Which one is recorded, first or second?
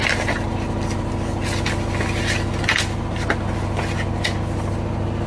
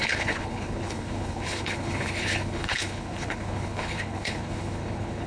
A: first